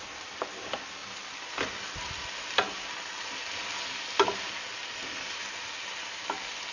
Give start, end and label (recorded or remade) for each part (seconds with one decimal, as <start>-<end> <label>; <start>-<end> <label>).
0.0-6.7 recorded